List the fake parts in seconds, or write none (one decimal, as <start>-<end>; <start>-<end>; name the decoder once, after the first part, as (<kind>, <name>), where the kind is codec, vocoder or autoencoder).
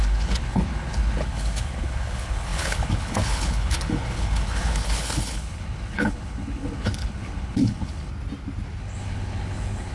0.0-8.1 (codec, HILCodec); 8.8-9.9